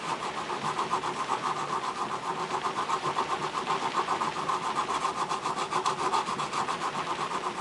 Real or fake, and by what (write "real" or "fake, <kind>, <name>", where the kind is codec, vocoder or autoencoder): real